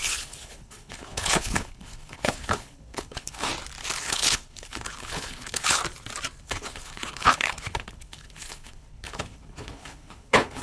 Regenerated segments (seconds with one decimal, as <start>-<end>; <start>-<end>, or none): 0.0-3.5; 4.0-5.8; 6.4-10.6